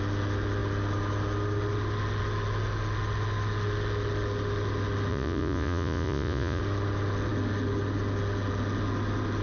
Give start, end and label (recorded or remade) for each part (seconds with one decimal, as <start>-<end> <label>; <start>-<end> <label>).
0.0-5.1 recorded; 5.1-6.6 remade; 6.6-9.4 recorded